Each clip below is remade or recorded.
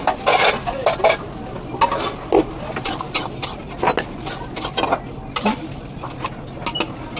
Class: recorded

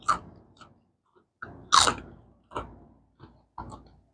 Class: recorded